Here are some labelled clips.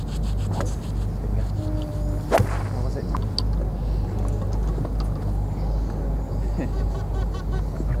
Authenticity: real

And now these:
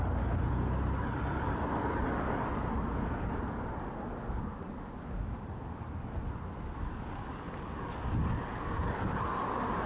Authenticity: real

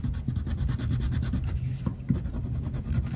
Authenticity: real